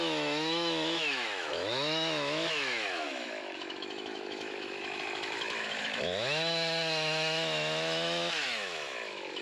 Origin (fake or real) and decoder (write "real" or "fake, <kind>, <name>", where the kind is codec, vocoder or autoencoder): fake, autoencoder, DAC-VAE